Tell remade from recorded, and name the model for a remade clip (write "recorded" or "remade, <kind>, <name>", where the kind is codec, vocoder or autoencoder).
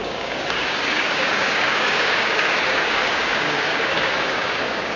remade, codec, DAC